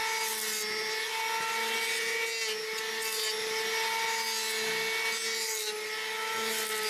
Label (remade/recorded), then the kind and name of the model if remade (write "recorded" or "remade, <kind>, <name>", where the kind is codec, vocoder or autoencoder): recorded